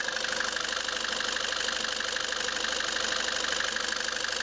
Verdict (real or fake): real